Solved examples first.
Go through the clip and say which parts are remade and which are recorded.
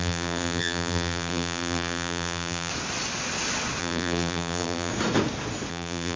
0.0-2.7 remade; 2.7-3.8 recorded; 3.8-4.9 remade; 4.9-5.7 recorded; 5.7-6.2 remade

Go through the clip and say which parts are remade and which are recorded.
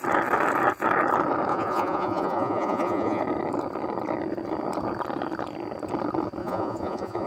0.0-1.5 recorded; 1.5-3.2 remade; 3.2-6.4 recorded; 6.4-7.3 remade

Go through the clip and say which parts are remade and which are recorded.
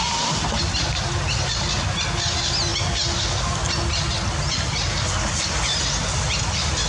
0.0-1.5 remade; 1.5-6.9 recorded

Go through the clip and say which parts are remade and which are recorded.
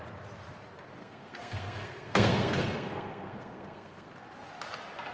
0.0-1.0 recorded; 1.0-4.1 remade; 4.1-5.1 recorded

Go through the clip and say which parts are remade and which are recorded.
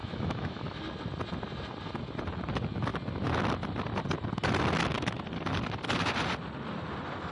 0.0-0.8 remade; 0.8-7.3 recorded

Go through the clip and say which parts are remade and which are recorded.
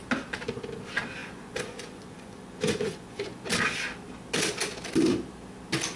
0.0-1.2 recorded; 1.2-3.4 remade; 3.4-6.0 recorded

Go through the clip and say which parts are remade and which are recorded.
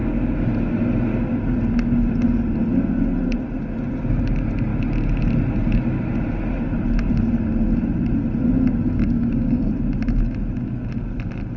0.0-9.0 recorded; 9.0-9.7 remade; 9.7-11.6 recorded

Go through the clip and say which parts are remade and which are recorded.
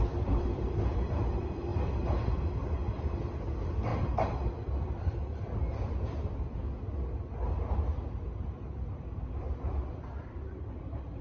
0.0-1.7 remade; 1.7-3.3 recorded; 3.3-3.9 remade; 3.9-4.8 recorded; 4.8-6.6 remade; 6.6-10.5 recorded; 10.5-11.2 remade